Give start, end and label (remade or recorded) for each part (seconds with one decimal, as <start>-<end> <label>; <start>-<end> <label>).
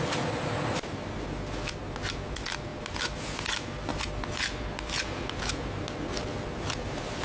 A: 0.0-7.2 recorded